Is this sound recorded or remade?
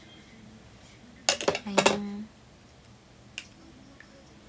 recorded